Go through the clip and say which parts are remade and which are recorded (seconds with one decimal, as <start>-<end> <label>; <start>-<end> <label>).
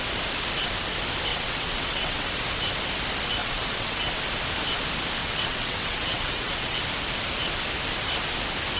0.0-1.3 recorded; 1.3-2.3 remade; 2.3-3.4 recorded; 3.4-4.1 remade; 4.1-5.2 recorded; 5.2-6.8 remade; 6.8-8.8 recorded